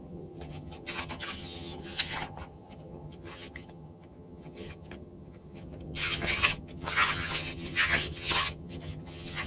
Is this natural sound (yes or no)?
no